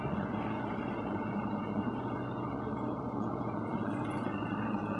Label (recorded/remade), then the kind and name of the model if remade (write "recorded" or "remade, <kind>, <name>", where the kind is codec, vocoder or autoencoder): remade, vocoder, Vocos